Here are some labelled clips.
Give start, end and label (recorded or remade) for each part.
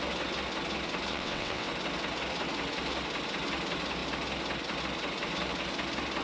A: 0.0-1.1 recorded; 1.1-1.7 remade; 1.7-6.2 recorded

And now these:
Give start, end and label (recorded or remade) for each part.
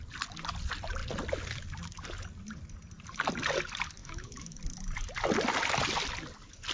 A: 0.0-4.0 recorded; 4.0-4.6 remade; 4.6-6.7 recorded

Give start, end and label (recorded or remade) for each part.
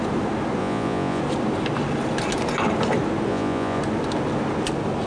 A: 0.0-0.6 recorded; 0.6-1.2 remade; 1.2-3.3 recorded; 3.3-3.8 remade; 3.8-5.1 recorded